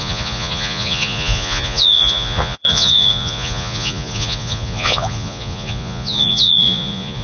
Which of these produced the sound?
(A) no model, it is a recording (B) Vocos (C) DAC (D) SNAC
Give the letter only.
B